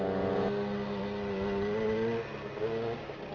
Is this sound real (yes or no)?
yes